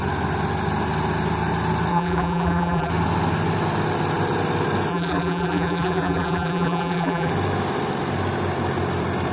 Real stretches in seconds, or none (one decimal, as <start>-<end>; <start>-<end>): 0.0-1.9; 2.9-4.9; 7.3-9.3